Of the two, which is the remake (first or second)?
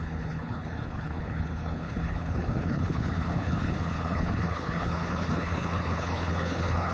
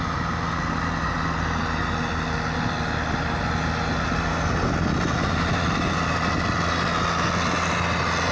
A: first